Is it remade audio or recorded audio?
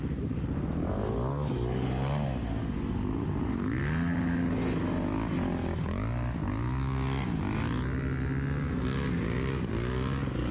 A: recorded